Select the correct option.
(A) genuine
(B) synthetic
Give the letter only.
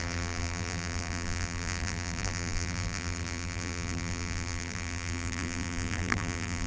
B